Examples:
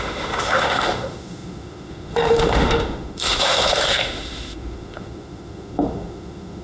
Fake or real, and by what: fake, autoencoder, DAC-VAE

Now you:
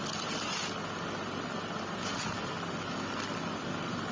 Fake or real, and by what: real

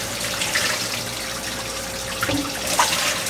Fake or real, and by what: real